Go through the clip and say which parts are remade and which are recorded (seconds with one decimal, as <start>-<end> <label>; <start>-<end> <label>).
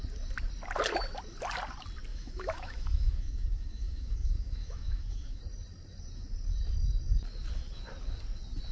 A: 0.0-2.1 recorded; 2.1-5.4 remade; 5.4-8.7 recorded